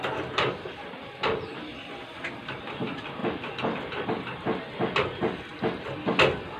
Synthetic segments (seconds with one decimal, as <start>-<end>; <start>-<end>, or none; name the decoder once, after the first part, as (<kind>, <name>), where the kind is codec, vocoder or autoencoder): none